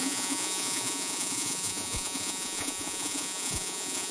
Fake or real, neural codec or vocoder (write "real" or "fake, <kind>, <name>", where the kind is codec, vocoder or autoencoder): fake, vocoder, Vocos